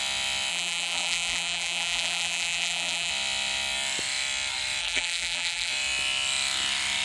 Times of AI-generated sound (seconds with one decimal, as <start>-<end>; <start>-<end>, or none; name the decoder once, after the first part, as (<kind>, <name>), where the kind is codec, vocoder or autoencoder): 0.5-3.1 (vocoder, BigVGAN v2); 4.8-5.7